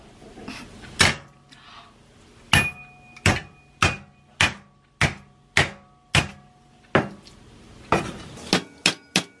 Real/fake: real